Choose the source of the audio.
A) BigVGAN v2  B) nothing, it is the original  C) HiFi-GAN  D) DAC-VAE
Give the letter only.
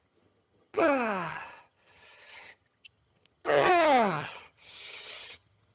C